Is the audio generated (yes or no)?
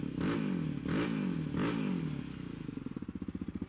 no